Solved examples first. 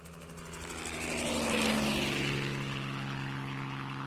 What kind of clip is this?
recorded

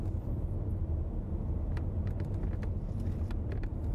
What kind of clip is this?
recorded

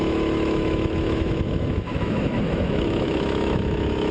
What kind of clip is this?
remade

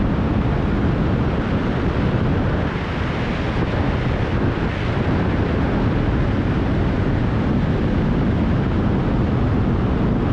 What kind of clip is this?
recorded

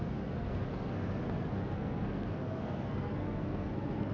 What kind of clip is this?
remade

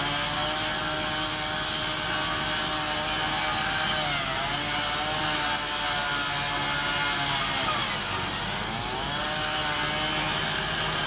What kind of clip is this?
recorded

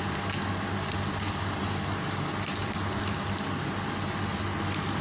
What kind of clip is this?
recorded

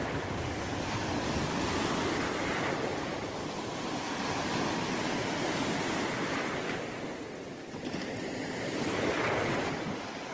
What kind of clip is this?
recorded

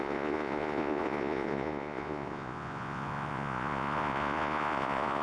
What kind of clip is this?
remade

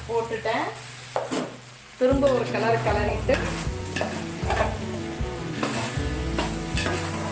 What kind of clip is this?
recorded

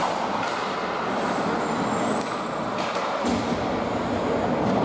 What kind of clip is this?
recorded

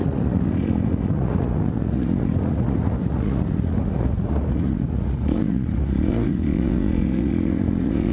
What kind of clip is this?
remade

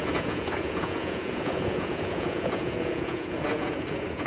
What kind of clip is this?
remade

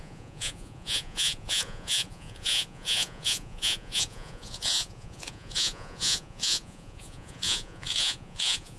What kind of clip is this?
remade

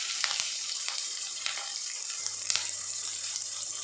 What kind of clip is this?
remade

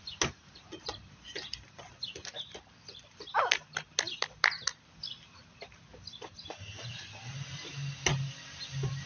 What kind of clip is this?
recorded